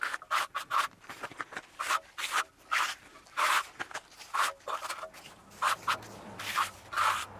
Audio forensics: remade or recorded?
remade